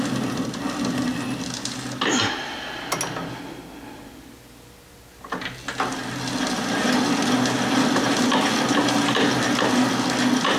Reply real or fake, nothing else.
real